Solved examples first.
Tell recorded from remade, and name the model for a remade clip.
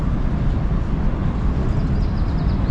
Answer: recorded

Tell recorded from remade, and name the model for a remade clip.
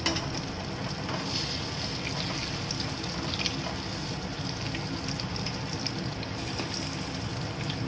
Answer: recorded